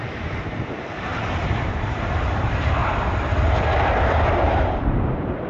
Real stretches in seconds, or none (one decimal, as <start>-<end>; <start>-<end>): 2.8-4.3